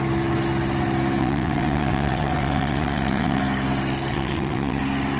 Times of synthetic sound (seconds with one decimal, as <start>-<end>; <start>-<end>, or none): 1.2-3.4; 4.1-4.8